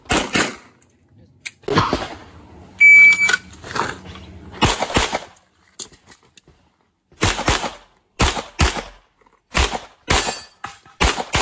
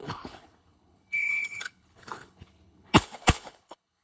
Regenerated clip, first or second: second